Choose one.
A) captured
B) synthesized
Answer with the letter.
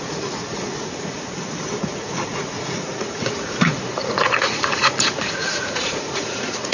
B